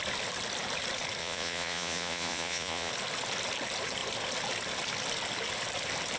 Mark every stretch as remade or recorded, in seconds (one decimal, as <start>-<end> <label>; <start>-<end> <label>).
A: 0.0-1.2 recorded; 1.2-2.9 remade; 2.9-6.2 recorded